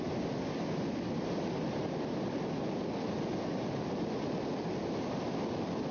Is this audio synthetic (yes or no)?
no